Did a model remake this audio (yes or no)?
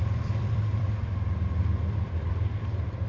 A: yes